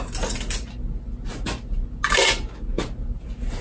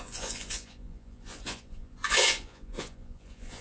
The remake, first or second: second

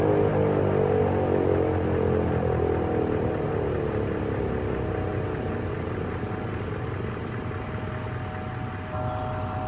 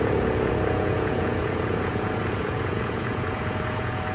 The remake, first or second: second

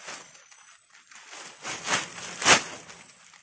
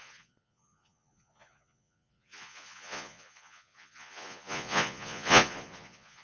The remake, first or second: second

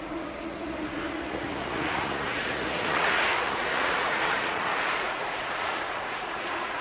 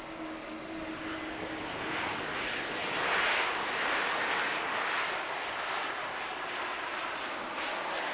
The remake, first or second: first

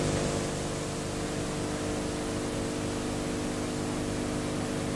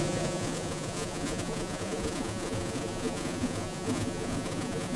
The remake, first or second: second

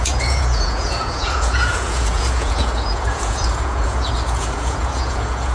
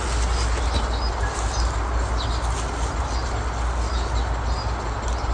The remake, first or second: first